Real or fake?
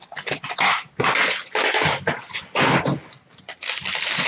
real